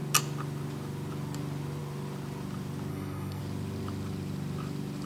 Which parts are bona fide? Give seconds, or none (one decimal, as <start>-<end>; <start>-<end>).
0.0-2.9; 3.4-5.1